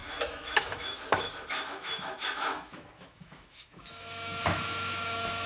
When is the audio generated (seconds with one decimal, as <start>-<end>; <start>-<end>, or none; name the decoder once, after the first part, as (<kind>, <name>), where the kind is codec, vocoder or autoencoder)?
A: 0.0-5.5 (autoencoder, DAC-VAE)